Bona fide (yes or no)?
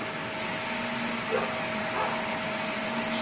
yes